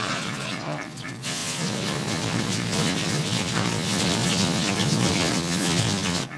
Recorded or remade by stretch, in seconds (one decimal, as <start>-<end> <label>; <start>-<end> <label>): 0.0-6.4 remade